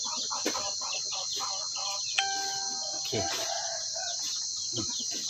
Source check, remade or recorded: recorded